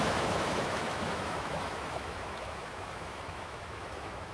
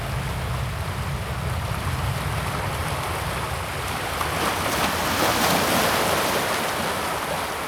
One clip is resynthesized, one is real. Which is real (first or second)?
second